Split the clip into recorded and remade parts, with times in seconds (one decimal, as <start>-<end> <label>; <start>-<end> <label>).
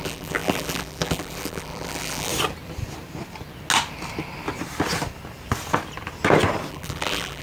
0.0-2.3 remade; 2.3-6.7 recorded; 6.7-7.4 remade